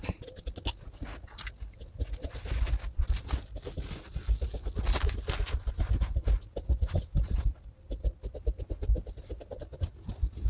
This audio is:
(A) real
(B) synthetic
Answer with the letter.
A